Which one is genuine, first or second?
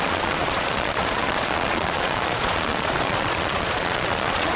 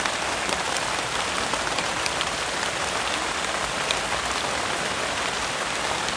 second